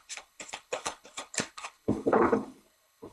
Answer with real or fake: fake